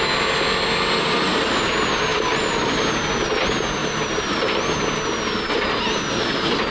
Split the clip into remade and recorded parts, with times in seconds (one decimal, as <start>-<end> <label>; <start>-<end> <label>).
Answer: 0.0-1.0 recorded; 1.0-1.7 remade; 1.7-2.1 recorded; 2.1-2.8 remade; 2.8-3.8 recorded; 3.8-4.4 remade; 4.4-6.7 recorded

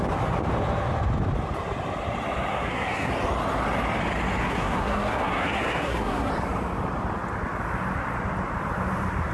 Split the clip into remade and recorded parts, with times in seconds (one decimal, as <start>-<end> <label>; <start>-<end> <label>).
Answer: 0.0-2.5 recorded; 2.5-3.1 remade; 3.1-4.4 recorded; 4.4-6.3 remade; 6.3-9.3 recorded

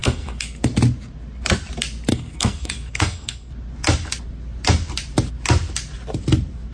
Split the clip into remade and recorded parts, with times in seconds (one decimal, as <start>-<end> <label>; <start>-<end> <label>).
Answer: 0.0-0.7 remade; 0.7-2.1 recorded; 2.1-3.5 remade; 3.5-6.7 recorded

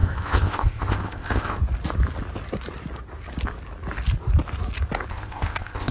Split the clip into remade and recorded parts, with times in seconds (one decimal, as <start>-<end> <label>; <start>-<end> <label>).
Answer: 0.0-1.6 remade; 1.6-5.1 recorded; 5.1-5.9 remade

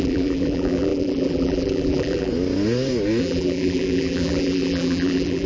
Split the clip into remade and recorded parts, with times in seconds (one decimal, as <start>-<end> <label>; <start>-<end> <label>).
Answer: 0.0-2.3 remade; 2.3-3.2 recorded; 3.2-5.5 remade

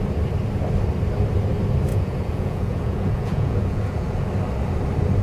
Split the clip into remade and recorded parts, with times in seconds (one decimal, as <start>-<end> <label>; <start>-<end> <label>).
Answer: 0.0-1.9 recorded; 1.9-4.3 remade; 4.3-5.2 recorded

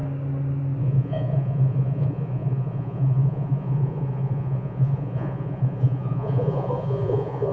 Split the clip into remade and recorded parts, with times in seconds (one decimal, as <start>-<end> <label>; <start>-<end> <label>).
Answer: 0.0-0.8 recorded; 0.8-7.5 remade

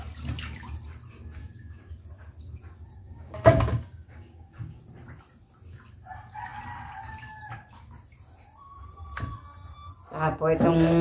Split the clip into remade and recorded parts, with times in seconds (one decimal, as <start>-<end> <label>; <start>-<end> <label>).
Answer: 0.0-1.4 recorded; 1.4-1.9 remade; 1.9-3.0 recorded; 3.0-4.8 remade; 4.8-11.0 recorded